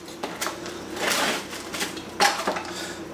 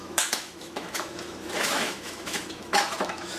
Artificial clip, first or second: second